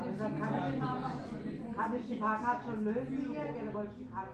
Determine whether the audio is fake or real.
real